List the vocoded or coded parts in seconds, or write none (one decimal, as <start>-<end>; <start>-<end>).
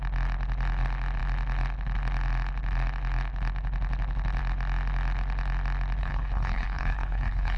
6.0-7.6